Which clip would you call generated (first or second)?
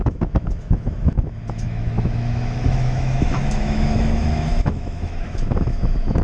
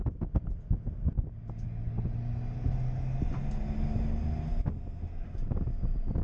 first